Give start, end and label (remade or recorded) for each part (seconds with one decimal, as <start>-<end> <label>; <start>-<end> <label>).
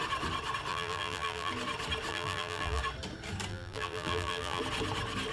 0.0-0.7 recorded; 0.7-1.5 remade; 1.5-2.1 recorded; 2.1-2.8 remade; 2.8-3.5 recorded; 3.5-4.6 remade; 4.6-5.3 recorded